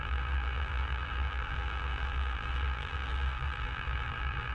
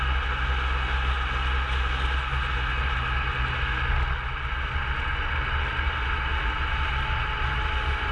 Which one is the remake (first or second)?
first